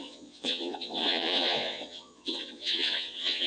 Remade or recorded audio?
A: remade